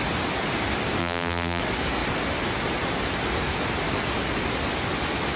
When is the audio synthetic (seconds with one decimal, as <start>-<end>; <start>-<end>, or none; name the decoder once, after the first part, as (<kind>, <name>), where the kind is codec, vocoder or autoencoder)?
1.0-1.6 (vocoder, BigVGAN v2)